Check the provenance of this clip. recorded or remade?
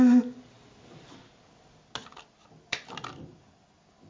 recorded